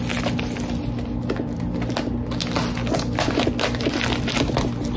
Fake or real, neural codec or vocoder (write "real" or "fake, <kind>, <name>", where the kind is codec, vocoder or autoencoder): real